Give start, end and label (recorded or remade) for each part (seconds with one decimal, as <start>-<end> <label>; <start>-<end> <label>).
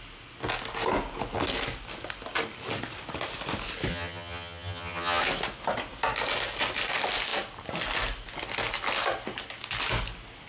0.0-3.9 recorded; 3.9-5.2 remade; 5.2-10.5 recorded